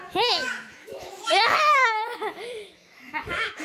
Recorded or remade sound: remade